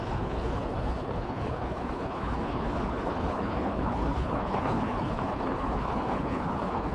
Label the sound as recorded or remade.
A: remade